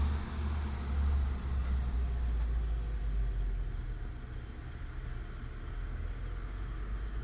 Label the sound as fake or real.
real